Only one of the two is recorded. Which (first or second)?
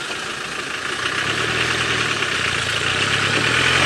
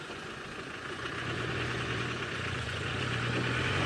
first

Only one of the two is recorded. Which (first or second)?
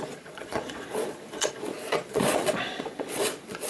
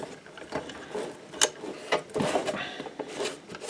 second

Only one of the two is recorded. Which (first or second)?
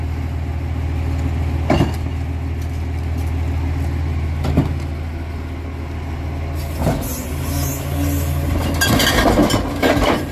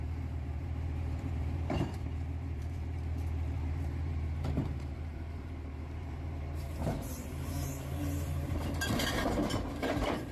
first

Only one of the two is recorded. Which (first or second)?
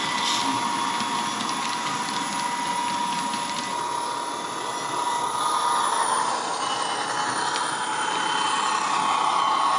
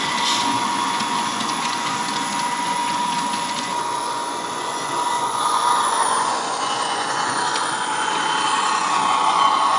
first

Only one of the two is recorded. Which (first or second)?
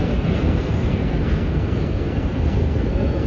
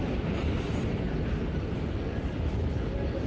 second